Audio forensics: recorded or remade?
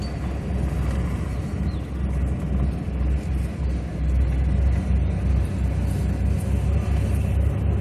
recorded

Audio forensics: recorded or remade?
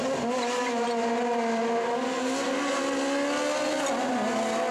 recorded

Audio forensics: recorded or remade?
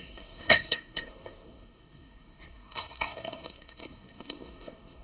remade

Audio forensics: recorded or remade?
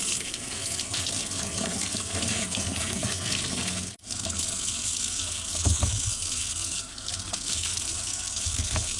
remade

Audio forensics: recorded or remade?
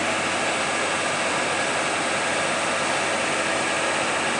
recorded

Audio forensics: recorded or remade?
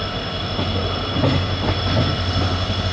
recorded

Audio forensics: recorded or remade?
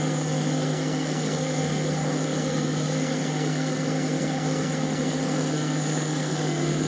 remade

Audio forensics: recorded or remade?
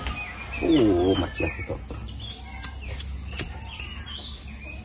recorded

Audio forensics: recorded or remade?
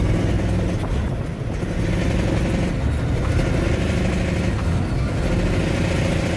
recorded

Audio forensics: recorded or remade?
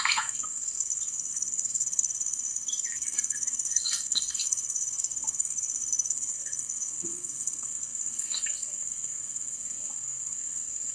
remade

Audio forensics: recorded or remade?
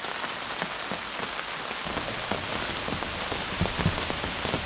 recorded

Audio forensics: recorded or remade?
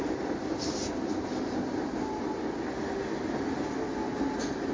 recorded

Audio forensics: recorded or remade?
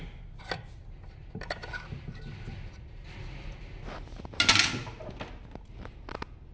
recorded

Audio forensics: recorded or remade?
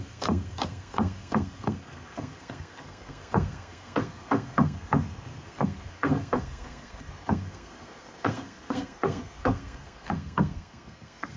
remade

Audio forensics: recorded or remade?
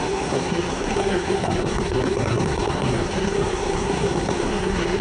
remade